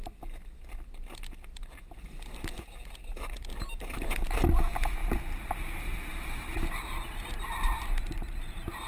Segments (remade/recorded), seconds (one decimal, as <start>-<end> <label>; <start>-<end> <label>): 0.0-5.0 recorded; 5.0-6.1 remade; 6.1-8.9 recorded